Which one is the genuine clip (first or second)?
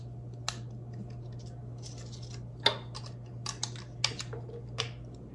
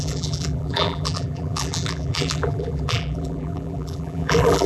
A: first